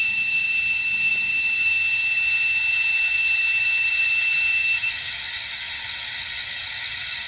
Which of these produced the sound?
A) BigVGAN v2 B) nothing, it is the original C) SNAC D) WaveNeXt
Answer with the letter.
D